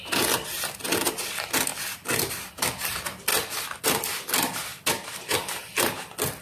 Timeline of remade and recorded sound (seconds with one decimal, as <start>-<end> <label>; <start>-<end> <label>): 0.0-3.3 remade; 3.3-3.8 recorded; 3.8-4.7 remade; 4.7-6.4 recorded